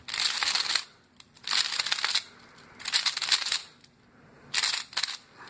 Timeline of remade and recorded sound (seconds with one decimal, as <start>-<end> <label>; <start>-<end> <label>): 0.0-5.5 recorded